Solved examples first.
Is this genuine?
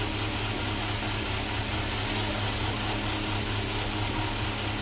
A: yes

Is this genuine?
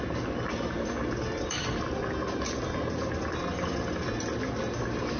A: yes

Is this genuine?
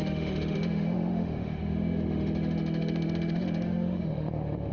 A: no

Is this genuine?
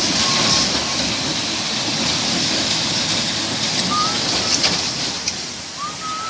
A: yes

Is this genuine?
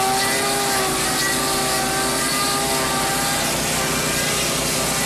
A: yes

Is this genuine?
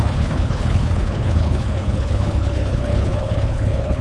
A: no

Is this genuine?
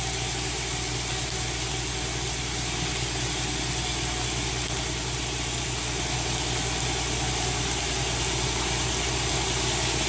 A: yes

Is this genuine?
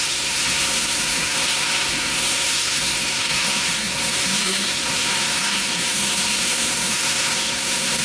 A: no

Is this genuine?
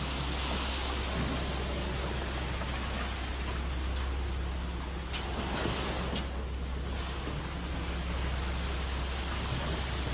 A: yes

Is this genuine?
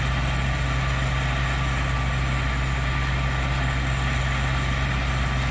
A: yes